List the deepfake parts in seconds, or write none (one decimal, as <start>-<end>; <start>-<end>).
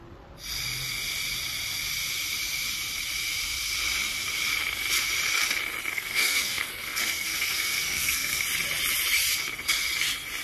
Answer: 5.9-8.4